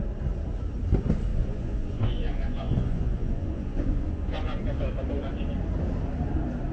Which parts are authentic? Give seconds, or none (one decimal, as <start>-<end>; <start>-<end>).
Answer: 0.0-1.3; 4.6-6.7